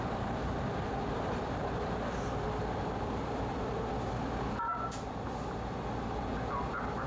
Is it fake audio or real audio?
fake